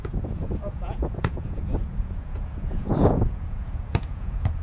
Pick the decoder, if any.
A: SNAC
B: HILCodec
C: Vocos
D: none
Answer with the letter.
C